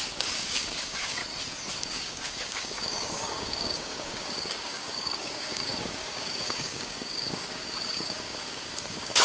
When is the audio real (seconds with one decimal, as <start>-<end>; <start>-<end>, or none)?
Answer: 1.2-1.8

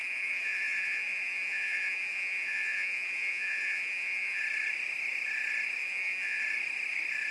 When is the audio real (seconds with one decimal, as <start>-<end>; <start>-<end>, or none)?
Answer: 4.4-5.8; 6.4-7.3

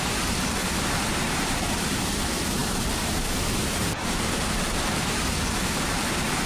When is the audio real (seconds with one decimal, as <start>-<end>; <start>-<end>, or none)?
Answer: 0.6-1.1

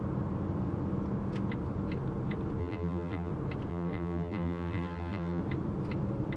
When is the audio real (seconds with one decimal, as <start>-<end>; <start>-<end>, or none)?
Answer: 0.0-2.6; 3.3-3.7; 5.4-6.4

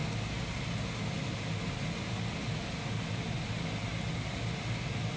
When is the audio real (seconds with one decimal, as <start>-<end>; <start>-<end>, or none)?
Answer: 0.0-5.2

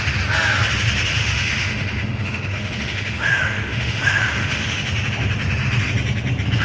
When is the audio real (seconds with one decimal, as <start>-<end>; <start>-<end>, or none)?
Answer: 0.0-1.2; 4.8-6.6